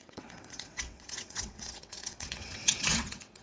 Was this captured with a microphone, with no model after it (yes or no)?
no